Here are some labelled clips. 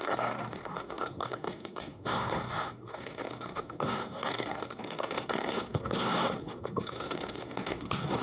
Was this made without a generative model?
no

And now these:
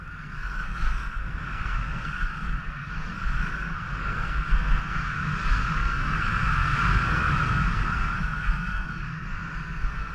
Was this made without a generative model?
no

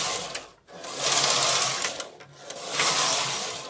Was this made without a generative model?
yes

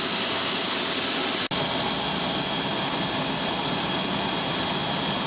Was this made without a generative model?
yes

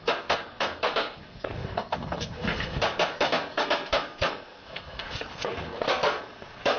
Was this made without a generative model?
no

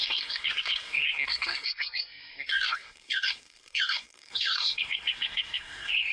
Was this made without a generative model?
no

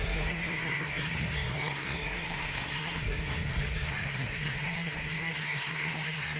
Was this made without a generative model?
no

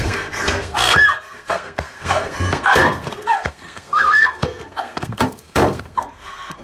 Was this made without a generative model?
no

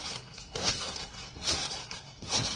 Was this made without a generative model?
no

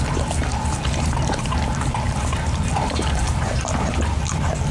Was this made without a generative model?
yes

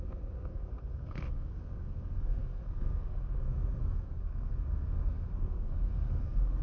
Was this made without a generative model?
no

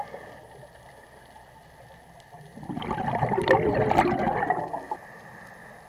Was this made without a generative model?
yes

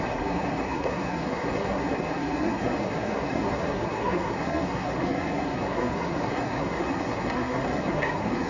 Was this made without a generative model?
no